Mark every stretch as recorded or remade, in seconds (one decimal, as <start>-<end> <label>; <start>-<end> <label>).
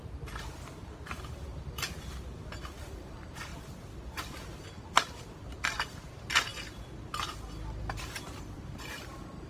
0.0-2.7 recorded; 2.7-3.5 remade; 3.5-5.9 recorded; 5.9-6.5 remade; 6.5-7.8 recorded; 7.8-9.5 remade